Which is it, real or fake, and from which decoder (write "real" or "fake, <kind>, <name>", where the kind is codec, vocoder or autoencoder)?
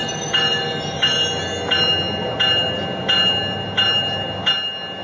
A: real